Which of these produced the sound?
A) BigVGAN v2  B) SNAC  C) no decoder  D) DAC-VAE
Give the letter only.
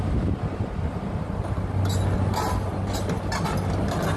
C